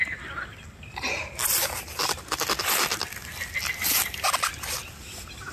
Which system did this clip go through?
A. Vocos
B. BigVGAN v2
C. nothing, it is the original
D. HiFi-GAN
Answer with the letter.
C